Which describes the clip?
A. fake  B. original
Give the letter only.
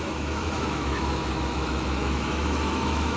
A